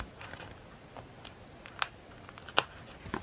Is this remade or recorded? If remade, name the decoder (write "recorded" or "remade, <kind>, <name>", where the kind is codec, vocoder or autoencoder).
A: recorded